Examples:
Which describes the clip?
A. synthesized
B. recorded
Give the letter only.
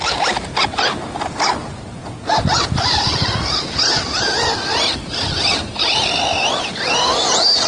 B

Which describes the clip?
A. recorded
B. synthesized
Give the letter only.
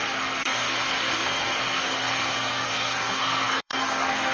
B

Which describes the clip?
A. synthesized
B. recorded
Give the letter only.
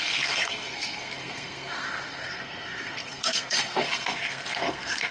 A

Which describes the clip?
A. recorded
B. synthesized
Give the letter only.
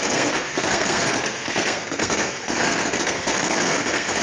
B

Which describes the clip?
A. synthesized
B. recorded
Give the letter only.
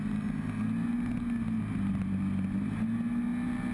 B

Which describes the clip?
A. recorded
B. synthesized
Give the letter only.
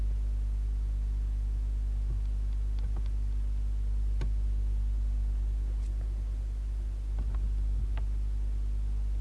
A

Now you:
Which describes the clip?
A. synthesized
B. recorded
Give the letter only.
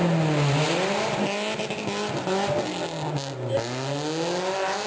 B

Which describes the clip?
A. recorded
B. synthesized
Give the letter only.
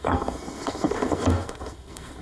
B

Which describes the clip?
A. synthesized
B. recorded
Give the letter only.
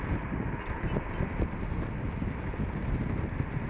B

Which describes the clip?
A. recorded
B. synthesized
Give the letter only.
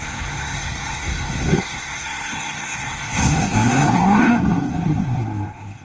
B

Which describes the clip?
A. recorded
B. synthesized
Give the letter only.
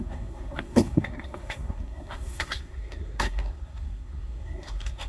B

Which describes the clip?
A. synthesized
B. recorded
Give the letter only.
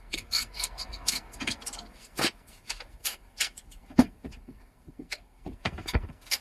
A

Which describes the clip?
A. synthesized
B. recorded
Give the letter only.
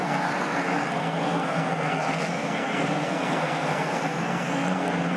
A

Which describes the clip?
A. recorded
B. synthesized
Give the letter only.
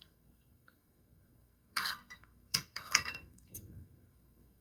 B